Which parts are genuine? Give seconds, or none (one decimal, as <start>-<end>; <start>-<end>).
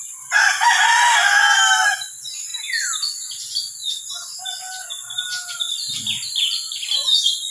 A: 0.0-7.5